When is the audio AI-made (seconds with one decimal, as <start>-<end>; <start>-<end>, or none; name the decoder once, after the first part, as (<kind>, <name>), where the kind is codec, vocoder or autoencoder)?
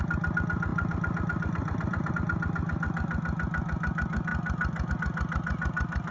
0.7-2.1 (vocoder, BigVGAN v2)